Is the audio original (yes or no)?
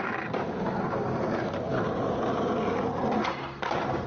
yes